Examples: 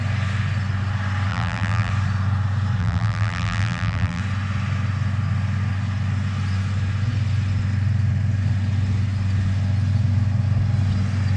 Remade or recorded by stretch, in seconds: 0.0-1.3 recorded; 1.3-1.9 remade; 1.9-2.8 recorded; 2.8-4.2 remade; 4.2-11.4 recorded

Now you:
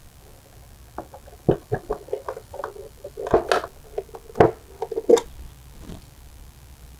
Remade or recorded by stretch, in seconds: 0.0-1.6 recorded; 1.6-3.3 remade; 3.3-7.0 recorded

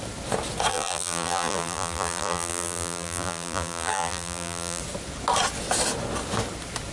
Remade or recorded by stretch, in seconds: 0.0-0.7 recorded; 0.7-4.8 remade; 4.8-6.9 recorded

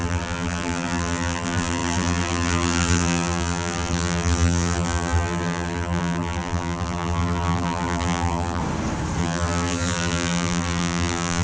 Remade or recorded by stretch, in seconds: 0.0-8.6 remade; 8.6-9.2 recorded; 9.2-11.4 remade

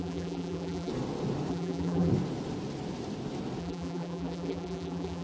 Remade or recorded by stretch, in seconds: 0.0-0.9 remade; 0.9-1.5 recorded; 1.5-2.1 remade; 2.1-3.6 recorded; 3.6-5.2 remade